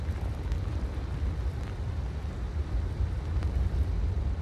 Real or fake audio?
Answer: real